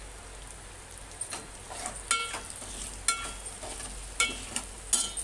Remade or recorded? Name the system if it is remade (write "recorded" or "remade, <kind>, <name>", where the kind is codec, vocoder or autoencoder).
recorded